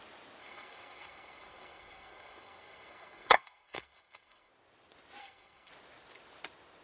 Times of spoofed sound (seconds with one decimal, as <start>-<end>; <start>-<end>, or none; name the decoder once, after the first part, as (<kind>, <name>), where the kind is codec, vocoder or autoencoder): 0.4-4.5 (codec, SNAC); 5.2-5.7